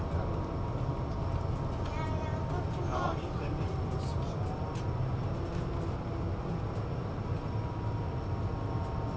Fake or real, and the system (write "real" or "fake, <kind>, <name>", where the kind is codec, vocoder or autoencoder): real